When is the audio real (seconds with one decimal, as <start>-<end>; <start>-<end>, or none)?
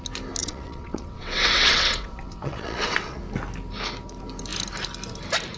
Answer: 0.0-0.4; 3.2-5.6